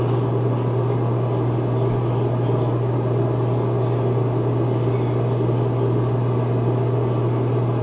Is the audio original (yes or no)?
yes